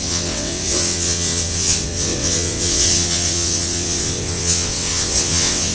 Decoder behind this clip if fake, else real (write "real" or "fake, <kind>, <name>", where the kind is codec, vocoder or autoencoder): fake, vocoder, WaveNeXt